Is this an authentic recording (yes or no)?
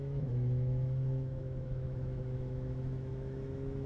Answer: no